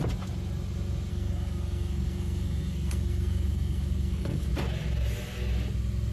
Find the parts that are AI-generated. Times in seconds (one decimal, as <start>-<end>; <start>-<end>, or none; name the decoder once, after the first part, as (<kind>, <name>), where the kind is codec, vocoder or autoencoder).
1.1-4.5 (codec, SNAC)